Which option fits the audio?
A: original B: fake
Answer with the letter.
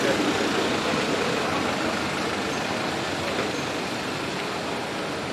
A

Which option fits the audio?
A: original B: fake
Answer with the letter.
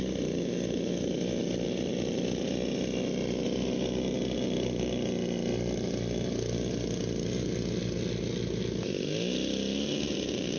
A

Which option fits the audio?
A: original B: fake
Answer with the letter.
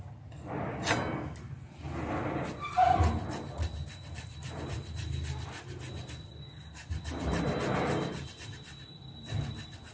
A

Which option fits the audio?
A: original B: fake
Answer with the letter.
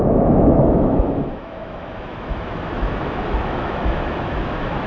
B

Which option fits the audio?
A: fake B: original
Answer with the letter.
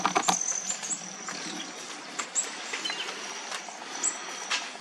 B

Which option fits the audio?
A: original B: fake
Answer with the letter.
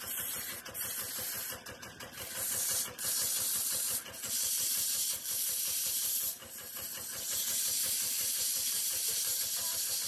A